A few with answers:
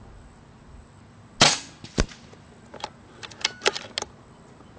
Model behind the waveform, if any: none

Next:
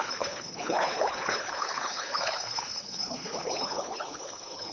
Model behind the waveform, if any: codec, HILCodec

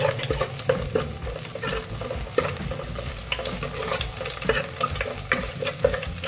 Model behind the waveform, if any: none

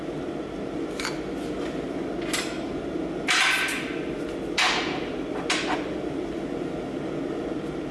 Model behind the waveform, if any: none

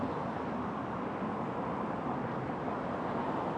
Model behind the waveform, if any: none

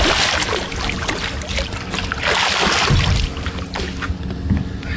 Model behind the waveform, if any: none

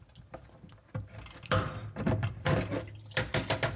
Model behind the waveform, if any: none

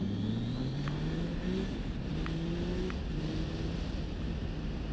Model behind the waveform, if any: none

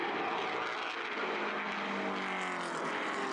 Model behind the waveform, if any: none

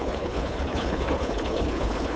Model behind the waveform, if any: codec, HILCodec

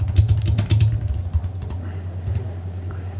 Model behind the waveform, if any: none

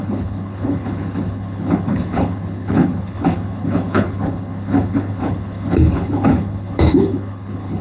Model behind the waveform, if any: codec, HILCodec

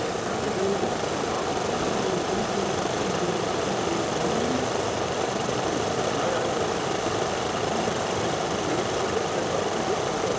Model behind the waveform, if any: none